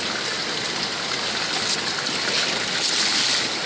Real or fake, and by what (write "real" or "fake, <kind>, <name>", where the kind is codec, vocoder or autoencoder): real